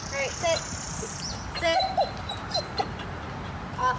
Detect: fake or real fake